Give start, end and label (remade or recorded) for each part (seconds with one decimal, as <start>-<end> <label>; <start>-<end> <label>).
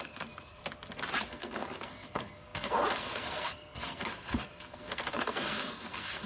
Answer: 0.0-0.6 remade; 0.6-1.3 recorded; 1.3-6.3 remade